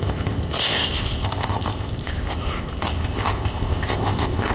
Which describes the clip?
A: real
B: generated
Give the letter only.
B